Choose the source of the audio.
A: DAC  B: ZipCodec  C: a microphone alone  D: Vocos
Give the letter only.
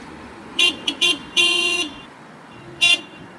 D